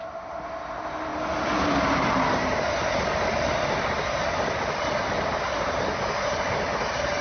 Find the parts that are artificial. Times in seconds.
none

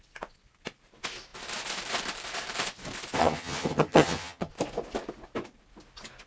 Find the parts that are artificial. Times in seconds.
3.2-4.5 (vocoder, HiFi-GAN)

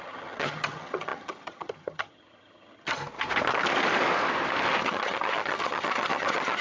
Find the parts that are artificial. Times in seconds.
0.0-3.0 (vocoder, HiFi-GAN); 4.8-6.6

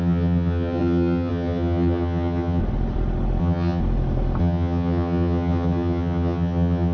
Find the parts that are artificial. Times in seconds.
0.0-2.6 (vocoder, HiFi-GAN); 3.4-3.8; 4.4-6.9

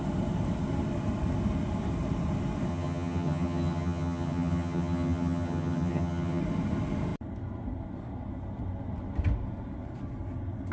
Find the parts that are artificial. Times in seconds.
2.7-6.4 (vocoder, HiFi-GAN)

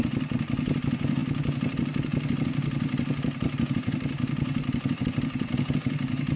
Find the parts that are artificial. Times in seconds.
none

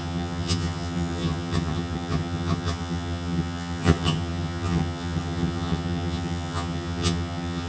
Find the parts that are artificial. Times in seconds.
0.0-7.7 (vocoder, HiFi-GAN)

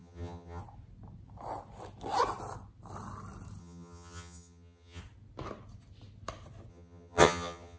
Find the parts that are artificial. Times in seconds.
0.0-0.6 (vocoder, HiFi-GAN); 3.6-5.0; 6.7-7.8